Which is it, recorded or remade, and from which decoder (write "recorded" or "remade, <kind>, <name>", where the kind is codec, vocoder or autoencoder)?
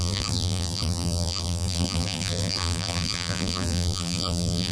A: remade, vocoder, BigVGAN v2